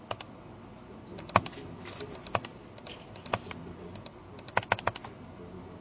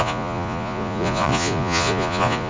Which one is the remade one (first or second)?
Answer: second